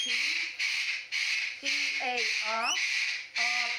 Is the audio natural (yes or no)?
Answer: no